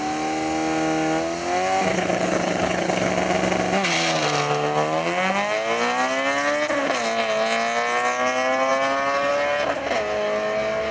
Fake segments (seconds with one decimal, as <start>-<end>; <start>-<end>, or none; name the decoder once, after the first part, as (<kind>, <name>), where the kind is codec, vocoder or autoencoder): 1.9-3.1 (codec, HILCodec)